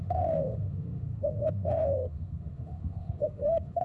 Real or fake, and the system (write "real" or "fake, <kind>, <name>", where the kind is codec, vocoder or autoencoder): fake, autoencoder, DAC-VAE